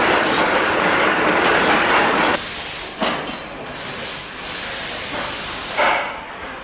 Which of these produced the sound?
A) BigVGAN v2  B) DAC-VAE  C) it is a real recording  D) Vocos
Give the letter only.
C